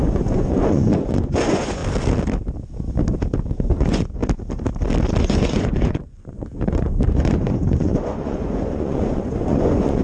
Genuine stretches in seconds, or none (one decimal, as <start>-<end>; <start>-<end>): 1.8-3.5; 4.2-5.2